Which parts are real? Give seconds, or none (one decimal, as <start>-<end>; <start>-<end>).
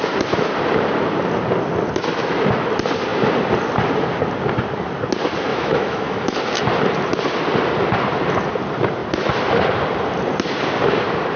0.0-5.5; 6.4-11.4